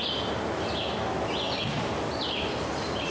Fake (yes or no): no